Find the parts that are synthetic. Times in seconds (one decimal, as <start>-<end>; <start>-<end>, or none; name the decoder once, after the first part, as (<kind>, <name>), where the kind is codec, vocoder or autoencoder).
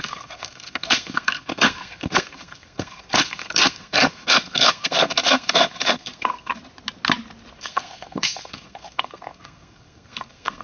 0.0-6.5 (codec, SNAC); 7.6-10.6